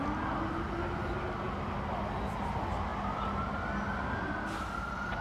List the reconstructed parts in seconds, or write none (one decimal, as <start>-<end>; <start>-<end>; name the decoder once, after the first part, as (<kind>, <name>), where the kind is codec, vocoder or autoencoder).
none